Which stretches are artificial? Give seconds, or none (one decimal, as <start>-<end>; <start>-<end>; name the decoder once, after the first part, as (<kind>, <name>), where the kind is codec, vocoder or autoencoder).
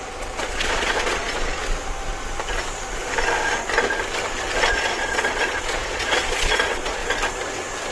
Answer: 0.0-1.6 (vocoder, Vocos); 4.7-7.0